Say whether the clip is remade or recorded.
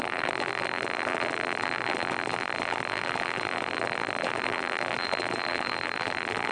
remade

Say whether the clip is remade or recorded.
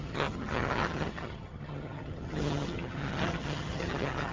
remade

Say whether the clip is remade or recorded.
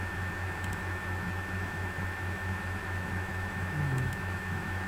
remade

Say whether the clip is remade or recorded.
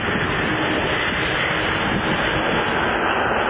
recorded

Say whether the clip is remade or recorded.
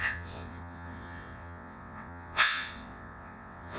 remade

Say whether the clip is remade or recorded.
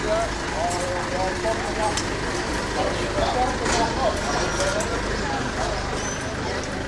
recorded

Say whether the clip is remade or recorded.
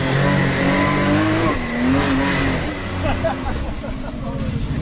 recorded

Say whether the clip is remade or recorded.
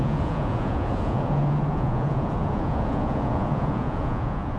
remade